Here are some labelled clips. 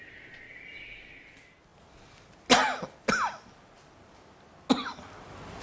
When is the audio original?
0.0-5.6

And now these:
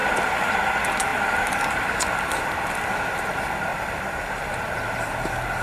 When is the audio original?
0.7-1.1; 2.2-3.7; 4.5-5.6

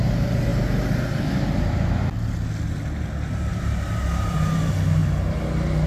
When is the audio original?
0.0-3.5; 4.6-5.9

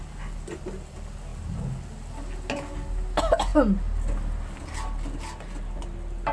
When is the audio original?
0.0-6.3

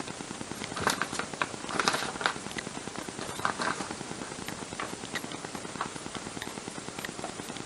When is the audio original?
none